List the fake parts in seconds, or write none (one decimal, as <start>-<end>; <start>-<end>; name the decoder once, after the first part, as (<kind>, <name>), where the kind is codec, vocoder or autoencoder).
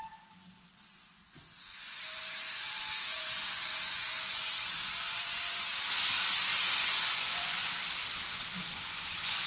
0.9-5.7 (vocoder, Vocos); 6.5-7.7; 8.5-9.5